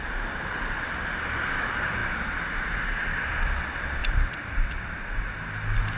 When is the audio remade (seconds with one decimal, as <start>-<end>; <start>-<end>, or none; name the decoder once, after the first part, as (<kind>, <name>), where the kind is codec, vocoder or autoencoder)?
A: 4.0-4.5 (vocoder, BigVGAN v2)